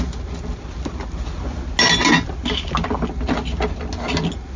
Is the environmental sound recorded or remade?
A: recorded